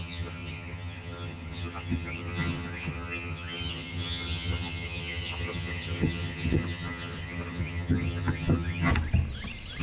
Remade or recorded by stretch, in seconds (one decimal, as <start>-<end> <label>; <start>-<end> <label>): 0.0-8.9 remade; 8.9-9.8 recorded